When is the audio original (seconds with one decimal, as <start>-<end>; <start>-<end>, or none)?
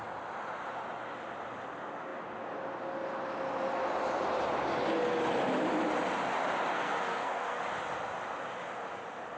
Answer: 0.0-6.7; 7.6-9.4